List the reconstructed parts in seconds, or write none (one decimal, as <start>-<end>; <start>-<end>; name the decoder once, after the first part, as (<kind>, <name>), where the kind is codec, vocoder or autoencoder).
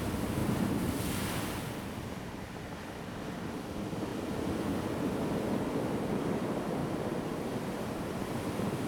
6.8-7.5 (vocoder, BigVGAN v2)